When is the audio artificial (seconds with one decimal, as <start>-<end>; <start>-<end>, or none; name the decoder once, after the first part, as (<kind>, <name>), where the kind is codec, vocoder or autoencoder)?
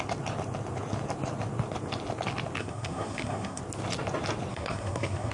2.6-3.6 (codec, SNAC); 4.5-5.3